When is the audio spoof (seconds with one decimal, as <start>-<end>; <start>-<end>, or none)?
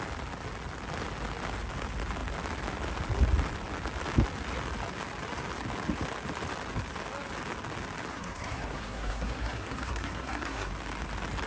8.1-10.7